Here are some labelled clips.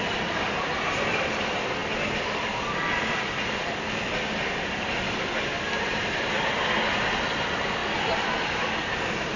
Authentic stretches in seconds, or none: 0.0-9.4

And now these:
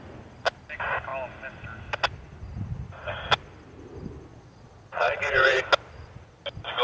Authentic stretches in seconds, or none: 0.0-4.3; 5.6-6.8

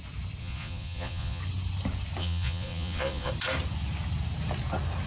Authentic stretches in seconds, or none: 0.0-0.4; 1.4-2.2; 3.3-5.1

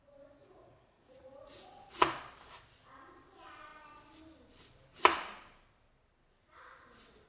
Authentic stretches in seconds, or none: 0.0-0.4; 2.2-7.3